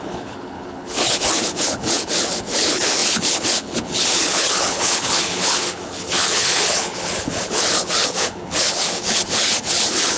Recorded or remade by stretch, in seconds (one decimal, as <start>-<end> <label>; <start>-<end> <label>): 0.0-10.2 remade